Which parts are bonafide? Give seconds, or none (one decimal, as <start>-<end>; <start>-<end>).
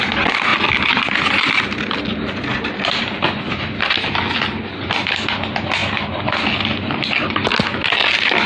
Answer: 0.0-8.5